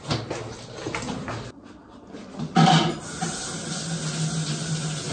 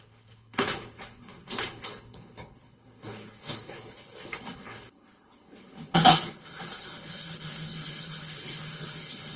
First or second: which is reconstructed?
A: second